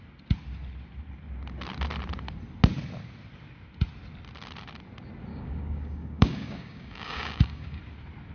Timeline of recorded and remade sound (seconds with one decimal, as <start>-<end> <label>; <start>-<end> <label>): 0.0-5.3 recorded; 5.3-7.8 remade; 7.8-8.3 recorded